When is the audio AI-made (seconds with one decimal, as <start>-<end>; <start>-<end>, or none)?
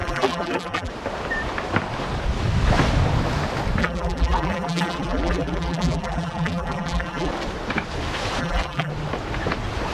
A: 0.0-0.9; 3.8-7.3; 8.4-8.9